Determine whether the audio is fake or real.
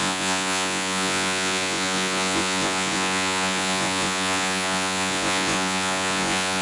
fake